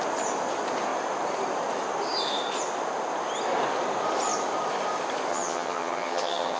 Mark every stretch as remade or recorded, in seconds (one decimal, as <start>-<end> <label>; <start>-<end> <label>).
0.0-5.3 recorded; 5.3-6.6 remade